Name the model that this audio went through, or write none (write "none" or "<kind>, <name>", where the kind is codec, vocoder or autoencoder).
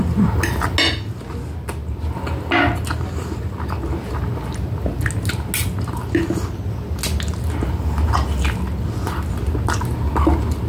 none